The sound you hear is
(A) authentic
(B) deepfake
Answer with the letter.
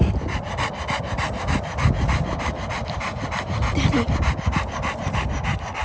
A